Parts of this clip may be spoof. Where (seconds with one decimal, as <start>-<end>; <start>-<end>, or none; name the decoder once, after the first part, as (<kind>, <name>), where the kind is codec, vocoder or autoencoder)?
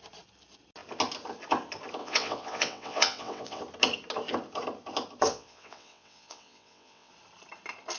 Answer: 2.0-3.6 (vocoder, WaveNeXt); 5.3-7.1